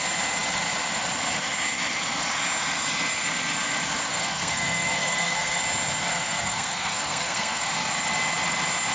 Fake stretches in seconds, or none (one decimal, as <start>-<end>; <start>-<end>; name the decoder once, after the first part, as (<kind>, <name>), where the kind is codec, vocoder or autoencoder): 4.1-5.6 (codec, SNAC); 6.1-7.7